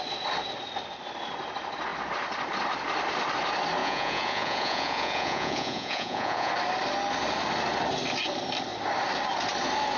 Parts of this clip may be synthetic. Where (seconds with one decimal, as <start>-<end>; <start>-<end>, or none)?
3.8-6.5